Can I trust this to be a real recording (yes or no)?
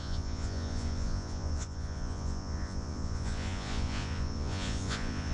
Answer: no